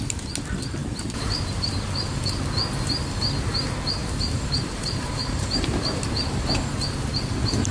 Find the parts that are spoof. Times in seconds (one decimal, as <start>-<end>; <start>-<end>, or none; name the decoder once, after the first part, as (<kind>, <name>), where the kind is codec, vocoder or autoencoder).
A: 0.8-1.7 (vocoder, BigVGAN v2); 4.0-6.1